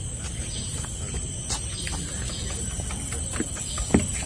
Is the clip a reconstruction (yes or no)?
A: no